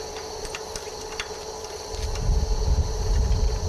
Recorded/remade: recorded